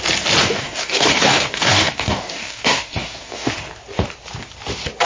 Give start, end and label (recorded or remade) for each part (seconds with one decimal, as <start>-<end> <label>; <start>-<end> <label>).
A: 0.0-0.4 recorded; 0.4-3.5 remade; 3.5-5.1 recorded